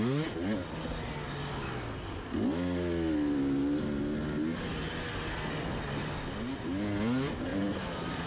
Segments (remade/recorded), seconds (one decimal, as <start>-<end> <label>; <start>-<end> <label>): 0.0-7.5 recorded; 7.5-8.3 remade